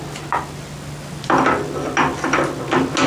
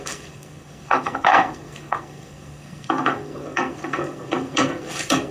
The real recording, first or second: first